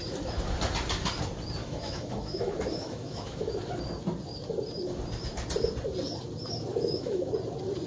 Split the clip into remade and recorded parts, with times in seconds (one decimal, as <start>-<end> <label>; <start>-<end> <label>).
0.0-1.6 recorded; 1.6-3.6 remade; 3.6-6.7 recorded; 6.7-7.3 remade; 7.3-7.9 recorded